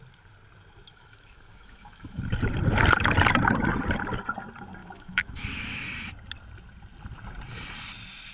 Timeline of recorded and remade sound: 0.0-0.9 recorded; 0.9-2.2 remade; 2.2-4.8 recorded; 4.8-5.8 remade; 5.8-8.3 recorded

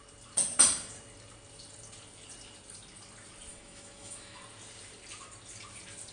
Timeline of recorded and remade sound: 0.0-3.5 recorded; 3.5-4.4 remade; 4.4-6.1 recorded

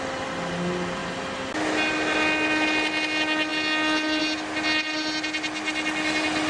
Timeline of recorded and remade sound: 0.0-6.5 recorded

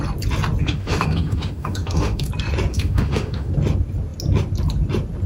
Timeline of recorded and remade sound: 0.0-0.6 recorded; 0.6-2.3 remade; 2.3-2.7 recorded; 2.7-3.5 remade; 3.5-5.3 recorded

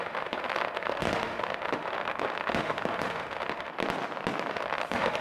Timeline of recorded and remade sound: 0.0-3.7 remade; 3.7-4.5 recorded; 4.5-5.2 remade

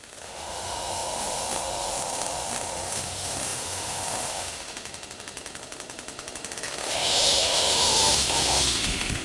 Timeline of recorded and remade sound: 0.0-9.2 remade

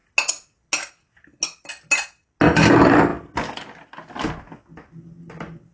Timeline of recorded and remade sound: 0.0-5.7 recorded